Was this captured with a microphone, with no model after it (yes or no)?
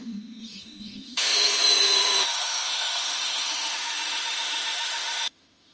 no